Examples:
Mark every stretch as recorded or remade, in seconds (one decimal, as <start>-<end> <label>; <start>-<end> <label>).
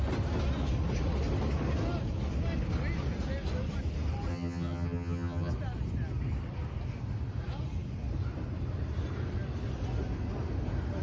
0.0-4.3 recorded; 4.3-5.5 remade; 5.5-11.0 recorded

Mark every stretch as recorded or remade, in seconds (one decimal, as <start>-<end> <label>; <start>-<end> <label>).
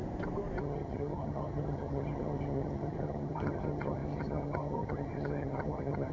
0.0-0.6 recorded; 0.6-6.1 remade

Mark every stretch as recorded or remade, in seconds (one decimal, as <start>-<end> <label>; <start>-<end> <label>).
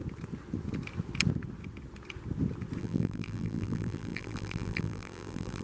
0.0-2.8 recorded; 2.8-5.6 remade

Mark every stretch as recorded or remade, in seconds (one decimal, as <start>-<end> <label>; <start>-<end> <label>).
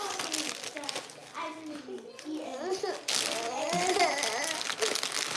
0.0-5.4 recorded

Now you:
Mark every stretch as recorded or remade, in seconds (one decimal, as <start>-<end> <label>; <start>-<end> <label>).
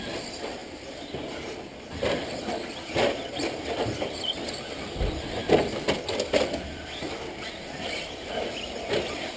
0.0-9.4 recorded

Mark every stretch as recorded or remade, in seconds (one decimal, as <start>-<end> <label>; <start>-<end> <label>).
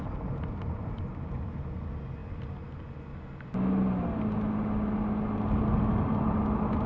0.0-6.9 recorded